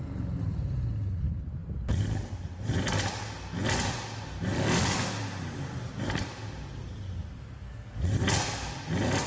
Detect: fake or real real